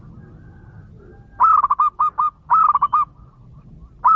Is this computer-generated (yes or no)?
no